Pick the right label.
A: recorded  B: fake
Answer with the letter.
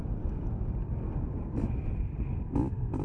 A